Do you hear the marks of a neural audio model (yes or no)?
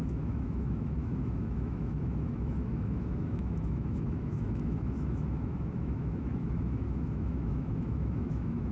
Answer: yes